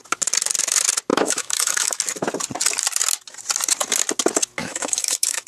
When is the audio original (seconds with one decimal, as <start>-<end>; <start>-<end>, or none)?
0.0-1.1; 2.0-4.6